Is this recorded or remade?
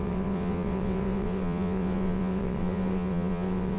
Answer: remade